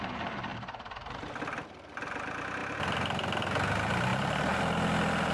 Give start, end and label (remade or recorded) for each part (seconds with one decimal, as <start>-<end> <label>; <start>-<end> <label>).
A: 0.0-0.5 recorded; 0.5-1.3 remade; 1.3-4.1 recorded; 4.1-4.6 remade; 4.6-5.3 recorded